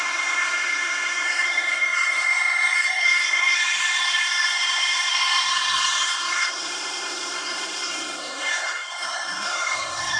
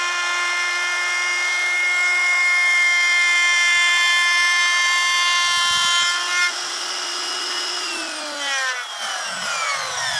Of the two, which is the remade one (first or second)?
first